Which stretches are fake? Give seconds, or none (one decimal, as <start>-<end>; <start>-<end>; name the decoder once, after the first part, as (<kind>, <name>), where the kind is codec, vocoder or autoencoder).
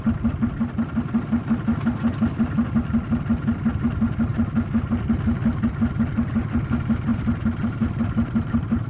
4.3-4.9 (vocoder, BigVGAN v2); 7.1-8.9